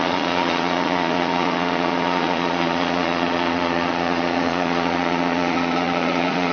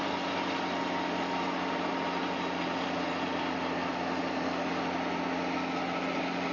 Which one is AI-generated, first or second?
first